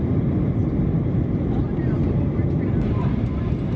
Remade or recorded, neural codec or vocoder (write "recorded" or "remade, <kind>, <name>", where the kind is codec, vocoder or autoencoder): recorded